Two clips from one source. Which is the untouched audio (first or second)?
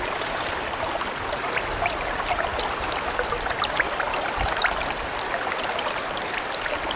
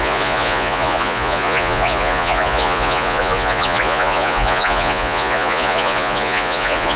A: first